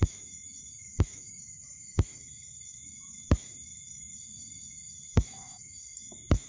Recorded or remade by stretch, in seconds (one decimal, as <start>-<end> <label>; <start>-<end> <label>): 0.0-6.5 remade